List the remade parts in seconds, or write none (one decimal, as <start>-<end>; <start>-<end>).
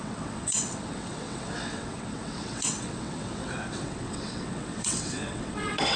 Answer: 0.0-6.0